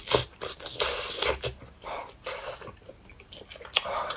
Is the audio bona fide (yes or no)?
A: yes